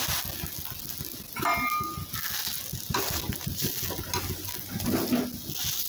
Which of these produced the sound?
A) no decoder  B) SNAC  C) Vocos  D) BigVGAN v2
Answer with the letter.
A